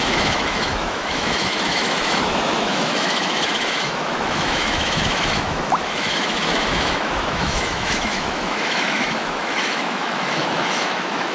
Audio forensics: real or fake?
fake